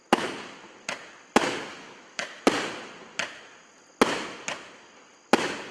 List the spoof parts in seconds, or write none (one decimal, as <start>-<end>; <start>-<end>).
1.7-2.4